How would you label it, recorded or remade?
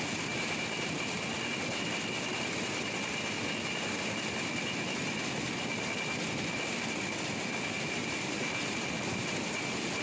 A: recorded